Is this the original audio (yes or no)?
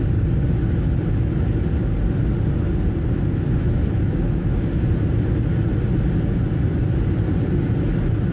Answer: yes